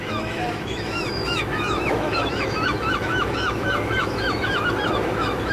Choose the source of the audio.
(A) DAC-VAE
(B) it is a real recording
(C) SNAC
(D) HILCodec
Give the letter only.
A